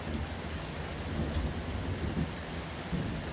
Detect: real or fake real